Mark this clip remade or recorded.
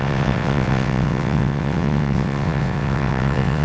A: remade